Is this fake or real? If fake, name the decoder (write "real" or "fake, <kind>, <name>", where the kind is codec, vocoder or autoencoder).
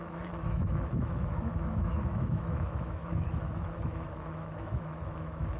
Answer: fake, autoencoder, DAC-VAE